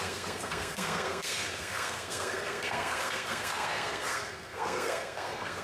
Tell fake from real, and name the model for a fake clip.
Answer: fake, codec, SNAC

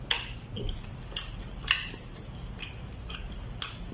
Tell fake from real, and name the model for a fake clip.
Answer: real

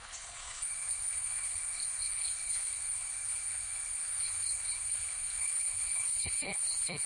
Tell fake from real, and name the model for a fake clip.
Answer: fake, codec, HILCodec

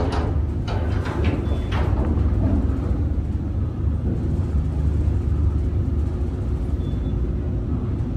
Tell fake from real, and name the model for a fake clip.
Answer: real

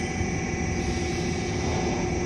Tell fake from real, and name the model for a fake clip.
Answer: real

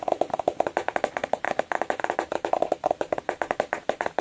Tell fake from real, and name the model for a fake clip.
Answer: fake, vocoder, BigVGAN v2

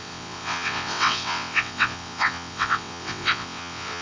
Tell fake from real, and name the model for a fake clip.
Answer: fake, vocoder, WaveNeXt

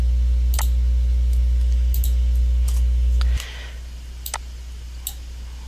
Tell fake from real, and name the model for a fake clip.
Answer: real